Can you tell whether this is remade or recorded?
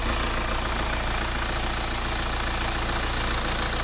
recorded